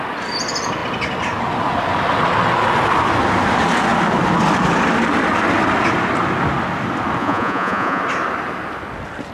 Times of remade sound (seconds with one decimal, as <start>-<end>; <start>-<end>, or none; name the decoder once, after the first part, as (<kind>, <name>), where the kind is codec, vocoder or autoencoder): 7.2-8.0 (vocoder, Vocos)